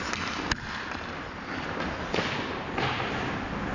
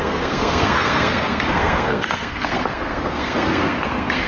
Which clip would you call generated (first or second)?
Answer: second